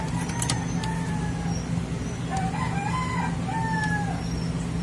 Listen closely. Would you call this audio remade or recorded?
recorded